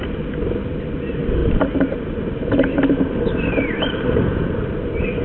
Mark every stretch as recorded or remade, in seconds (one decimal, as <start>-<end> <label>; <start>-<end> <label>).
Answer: 0.0-1.4 recorded; 1.4-4.5 remade; 4.5-5.2 recorded